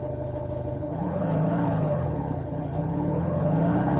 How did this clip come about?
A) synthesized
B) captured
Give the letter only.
A